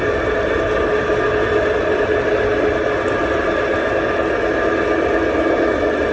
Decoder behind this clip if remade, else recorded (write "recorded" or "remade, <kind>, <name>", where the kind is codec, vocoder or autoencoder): recorded